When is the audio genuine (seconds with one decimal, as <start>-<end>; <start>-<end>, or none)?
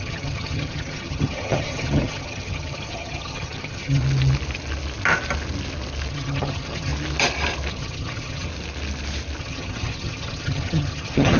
4.0-6.1; 6.9-7.7; 8.5-9.4